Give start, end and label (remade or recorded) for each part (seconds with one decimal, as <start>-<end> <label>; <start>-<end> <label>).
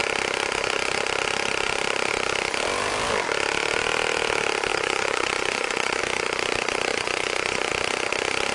0.0-4.7 recorded; 4.7-6.0 remade; 6.0-6.9 recorded; 6.9-7.7 remade; 7.7-8.5 recorded